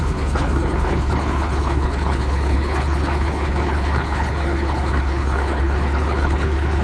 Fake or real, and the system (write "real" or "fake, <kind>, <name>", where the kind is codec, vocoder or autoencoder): fake, codec, HILCodec